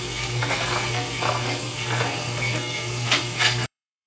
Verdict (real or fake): fake